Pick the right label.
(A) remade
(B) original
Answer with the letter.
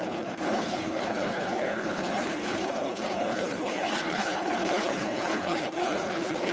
A